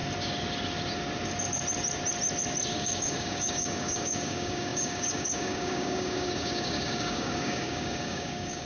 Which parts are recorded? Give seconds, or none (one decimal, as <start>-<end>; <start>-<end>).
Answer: 0.0-2.7